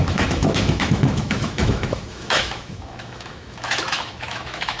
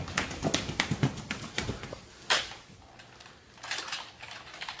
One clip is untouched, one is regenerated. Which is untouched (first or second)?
second